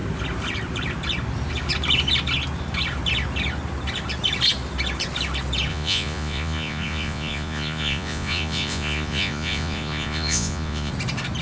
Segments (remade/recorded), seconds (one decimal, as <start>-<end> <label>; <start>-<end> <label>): 0.0-5.7 recorded; 5.7-10.9 remade; 10.9-11.4 recorded